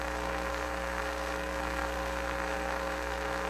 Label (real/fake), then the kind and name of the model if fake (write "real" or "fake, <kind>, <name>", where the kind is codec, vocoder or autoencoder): fake, codec, SNAC